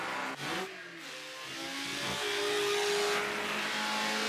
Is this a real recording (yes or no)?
yes